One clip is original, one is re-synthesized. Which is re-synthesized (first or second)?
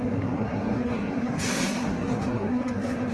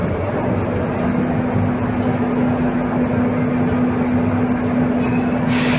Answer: first